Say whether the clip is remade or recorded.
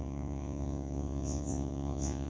remade